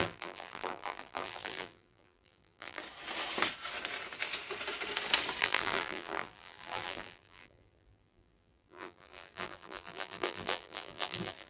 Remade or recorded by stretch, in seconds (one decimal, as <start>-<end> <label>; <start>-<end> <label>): 0.0-2.8 remade; 2.8-5.4 recorded; 5.4-11.5 remade

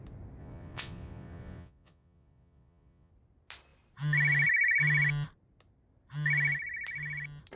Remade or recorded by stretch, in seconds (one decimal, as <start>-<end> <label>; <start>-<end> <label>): 0.0-0.4 recorded; 0.4-3.1 remade; 3.1-7.6 recorded

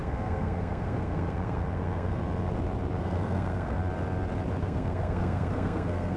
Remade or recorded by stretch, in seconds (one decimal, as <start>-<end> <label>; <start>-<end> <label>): 0.0-2.2 remade; 2.2-3.0 recorded; 3.0-3.8 remade; 3.8-4.6 recorded; 4.6-6.2 remade

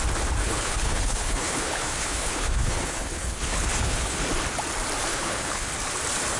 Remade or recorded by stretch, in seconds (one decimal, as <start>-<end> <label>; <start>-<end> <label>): 0.0-0.4 recorded; 0.4-4.2 remade; 4.2-5.1 recorded; 5.1-5.7 remade; 5.7-6.4 recorded